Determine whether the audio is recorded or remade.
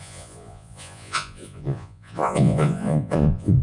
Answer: remade